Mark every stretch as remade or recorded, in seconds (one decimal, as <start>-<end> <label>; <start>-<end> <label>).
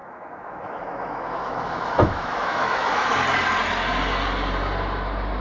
0.0-3.2 remade; 3.2-5.4 recorded